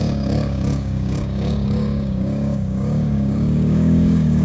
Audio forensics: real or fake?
fake